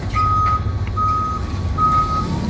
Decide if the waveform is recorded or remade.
recorded